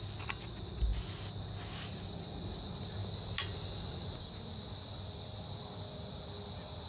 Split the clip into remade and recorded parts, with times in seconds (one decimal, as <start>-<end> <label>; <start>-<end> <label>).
0.0-6.9 recorded